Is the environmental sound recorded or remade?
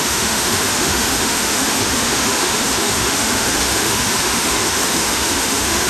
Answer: remade